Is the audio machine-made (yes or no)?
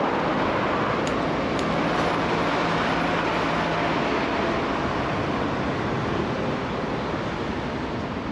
no